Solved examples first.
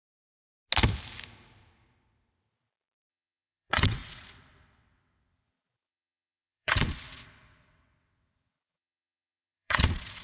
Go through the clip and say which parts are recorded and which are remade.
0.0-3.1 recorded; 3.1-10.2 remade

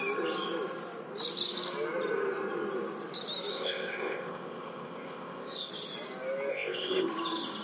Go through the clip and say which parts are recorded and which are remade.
0.0-3.5 recorded; 3.5-5.7 remade; 5.7-6.5 recorded; 6.5-7.1 remade; 7.1-7.6 recorded

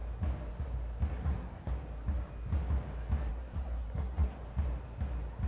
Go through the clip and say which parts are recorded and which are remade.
0.0-1.1 recorded; 1.1-1.7 remade; 1.7-3.3 recorded; 3.3-4.4 remade; 4.4-5.5 recorded